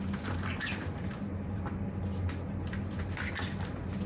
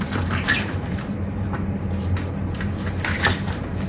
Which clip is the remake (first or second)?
second